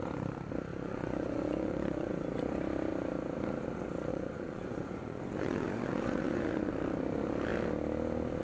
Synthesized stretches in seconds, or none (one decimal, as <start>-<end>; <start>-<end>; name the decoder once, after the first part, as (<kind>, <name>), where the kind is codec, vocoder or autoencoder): 0.7-2.1 (vocoder, Vocos); 4.1-6.7